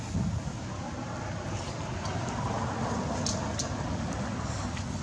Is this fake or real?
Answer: real